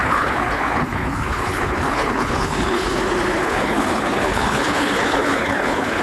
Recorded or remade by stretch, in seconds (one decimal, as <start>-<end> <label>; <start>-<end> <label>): 0.0-3.0 remade; 3.0-3.4 recorded; 3.4-6.0 remade